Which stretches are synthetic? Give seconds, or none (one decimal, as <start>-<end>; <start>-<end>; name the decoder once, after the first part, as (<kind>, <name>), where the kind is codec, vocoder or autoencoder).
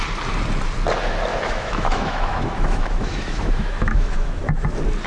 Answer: 1.3-4.4 (autoencoder, DAC-VAE)